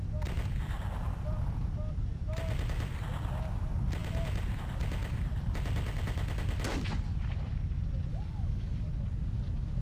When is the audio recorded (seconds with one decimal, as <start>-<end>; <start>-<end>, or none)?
0.0-8.1; 8.9-9.8